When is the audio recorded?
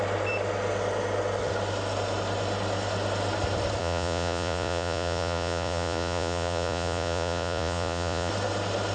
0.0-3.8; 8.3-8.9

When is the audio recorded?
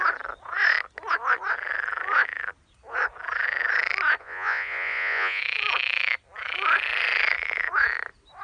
0.0-4.2; 5.4-8.4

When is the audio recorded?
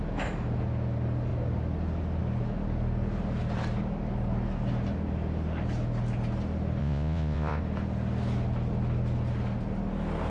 0.0-6.8; 7.6-10.3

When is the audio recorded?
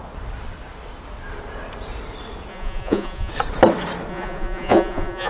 0.0-2.5; 3.3-4.1